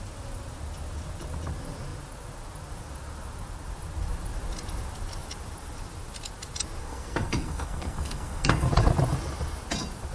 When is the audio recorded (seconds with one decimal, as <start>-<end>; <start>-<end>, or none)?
0.0-6.8; 8.7-10.1